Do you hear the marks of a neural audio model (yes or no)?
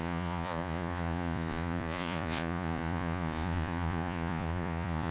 yes